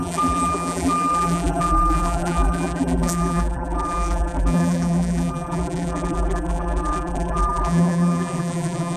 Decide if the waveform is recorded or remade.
remade